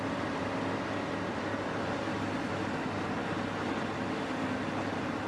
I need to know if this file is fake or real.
real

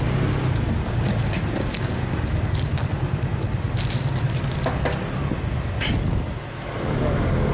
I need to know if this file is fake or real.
real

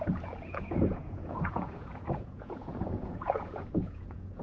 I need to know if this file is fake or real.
fake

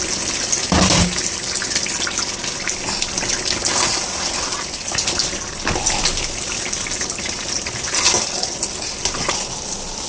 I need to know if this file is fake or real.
real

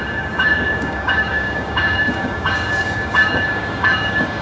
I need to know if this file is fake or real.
fake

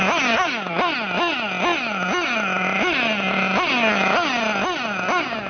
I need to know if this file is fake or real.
real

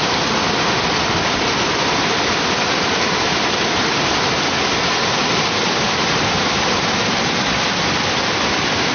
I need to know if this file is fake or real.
fake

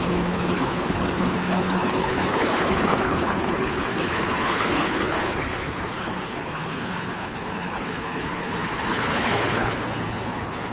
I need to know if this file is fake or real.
fake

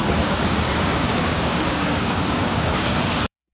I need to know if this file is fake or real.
fake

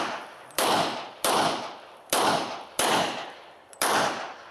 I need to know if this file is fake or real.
fake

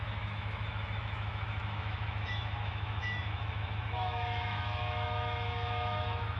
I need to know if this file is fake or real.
fake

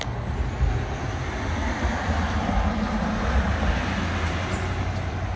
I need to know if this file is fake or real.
real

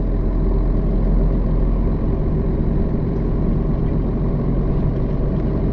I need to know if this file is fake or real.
real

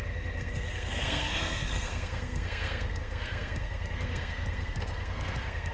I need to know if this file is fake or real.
fake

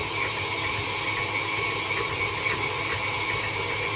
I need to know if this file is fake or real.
real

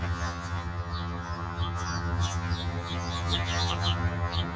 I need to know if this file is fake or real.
fake